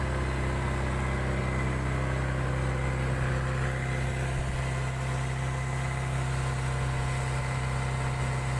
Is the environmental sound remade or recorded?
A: recorded